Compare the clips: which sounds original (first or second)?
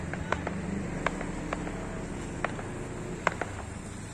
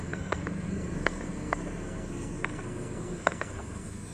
first